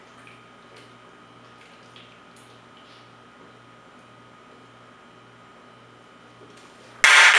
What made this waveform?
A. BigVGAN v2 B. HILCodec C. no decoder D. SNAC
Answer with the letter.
C